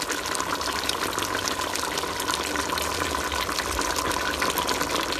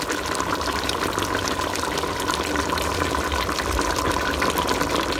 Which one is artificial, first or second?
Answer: second